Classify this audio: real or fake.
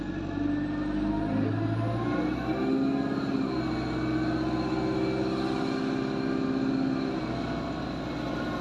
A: real